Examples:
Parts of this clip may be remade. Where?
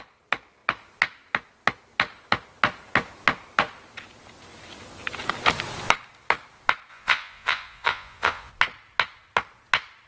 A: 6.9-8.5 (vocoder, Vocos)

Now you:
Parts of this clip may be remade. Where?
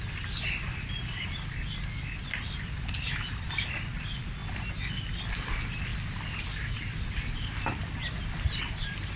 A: none